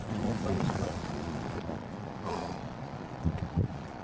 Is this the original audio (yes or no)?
no